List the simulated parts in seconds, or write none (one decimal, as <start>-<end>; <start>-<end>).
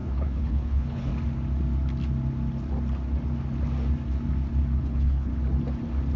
0.0-1.1; 4.8-5.3